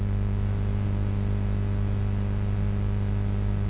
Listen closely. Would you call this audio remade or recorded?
recorded